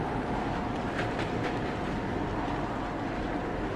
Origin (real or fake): real